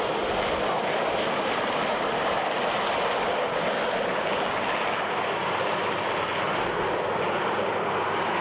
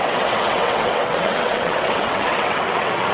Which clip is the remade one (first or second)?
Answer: second